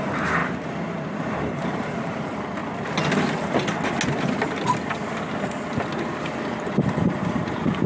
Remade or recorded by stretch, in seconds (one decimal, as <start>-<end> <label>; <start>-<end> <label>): 0.0-0.4 remade; 0.4-1.2 recorded; 1.2-2.6 remade; 2.6-6.2 recorded; 6.2-7.9 remade